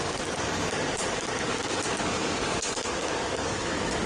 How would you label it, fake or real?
fake